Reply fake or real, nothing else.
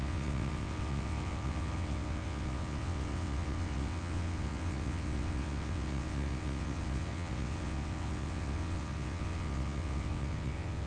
fake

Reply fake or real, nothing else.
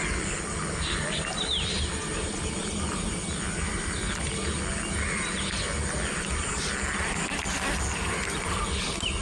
real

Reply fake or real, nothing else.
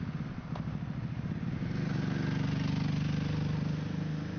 real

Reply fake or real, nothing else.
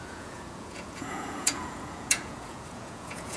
fake